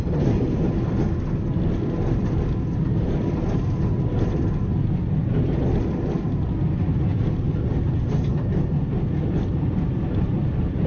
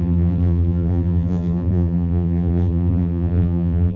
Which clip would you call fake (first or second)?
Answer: second